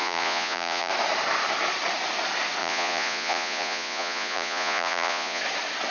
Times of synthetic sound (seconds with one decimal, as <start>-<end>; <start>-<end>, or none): 0.0-0.9; 2.6-5.4